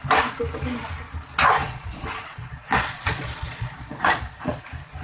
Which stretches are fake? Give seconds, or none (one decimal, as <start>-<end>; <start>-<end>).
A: 1.6-4.6

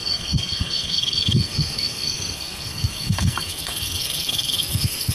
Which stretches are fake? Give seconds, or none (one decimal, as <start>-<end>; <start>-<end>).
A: 0.0-5.1

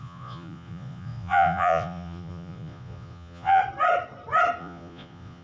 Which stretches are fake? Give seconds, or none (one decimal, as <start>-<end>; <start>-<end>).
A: 0.0-3.6; 4.6-5.4

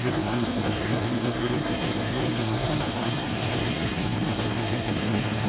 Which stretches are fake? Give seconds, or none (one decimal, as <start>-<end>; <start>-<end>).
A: 0.0-5.5